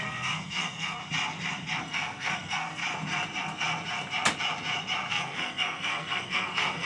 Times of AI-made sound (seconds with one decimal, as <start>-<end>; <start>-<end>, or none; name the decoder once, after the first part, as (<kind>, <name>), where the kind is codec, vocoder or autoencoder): 0.0-1.0 (codec, SNAC); 1.8-2.8; 5.1-6.9